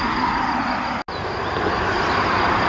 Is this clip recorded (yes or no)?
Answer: yes